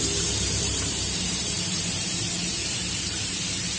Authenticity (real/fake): fake